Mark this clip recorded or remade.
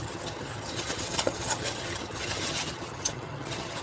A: remade